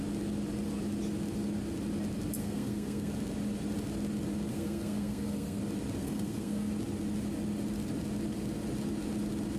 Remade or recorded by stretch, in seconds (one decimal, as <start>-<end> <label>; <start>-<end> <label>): 0.0-2.4 recorded; 2.4-3.1 remade; 3.1-4.5 recorded; 4.5-5.6 remade; 5.6-6.0 recorded; 6.0-6.7 remade; 6.7-9.6 recorded